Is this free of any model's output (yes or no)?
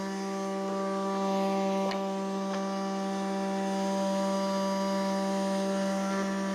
yes